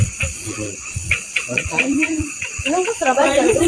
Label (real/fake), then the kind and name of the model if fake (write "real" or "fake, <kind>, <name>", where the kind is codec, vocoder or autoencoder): fake, vocoder, Vocos